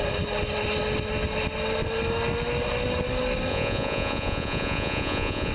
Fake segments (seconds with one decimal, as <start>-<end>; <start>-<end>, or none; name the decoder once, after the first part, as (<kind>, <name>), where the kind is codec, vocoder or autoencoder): 3.5-5.5 (vocoder, Vocos)